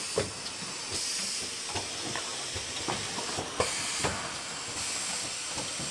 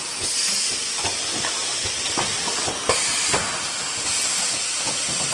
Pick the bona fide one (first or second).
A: first